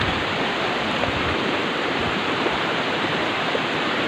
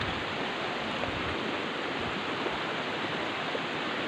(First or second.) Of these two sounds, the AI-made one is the first